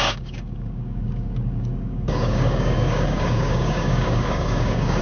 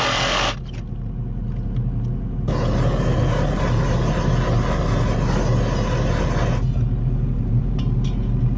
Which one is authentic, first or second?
second